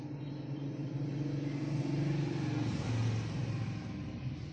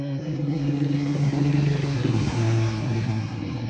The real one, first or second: first